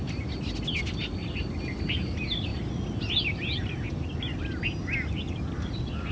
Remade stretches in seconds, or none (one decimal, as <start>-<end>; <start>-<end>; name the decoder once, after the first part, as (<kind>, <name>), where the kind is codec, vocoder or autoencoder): none